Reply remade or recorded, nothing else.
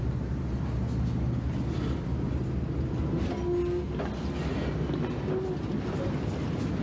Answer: recorded